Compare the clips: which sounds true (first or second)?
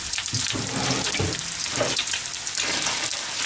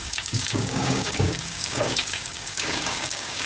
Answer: first